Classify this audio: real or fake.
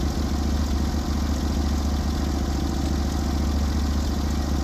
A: real